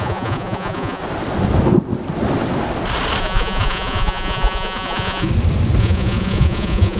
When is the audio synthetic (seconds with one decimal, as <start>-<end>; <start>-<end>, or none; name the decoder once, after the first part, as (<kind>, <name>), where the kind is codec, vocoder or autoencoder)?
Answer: 0.0-1.0 (vocoder, Vocos); 3.2-5.3; 5.8-7.0